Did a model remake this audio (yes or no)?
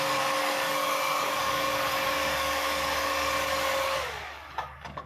yes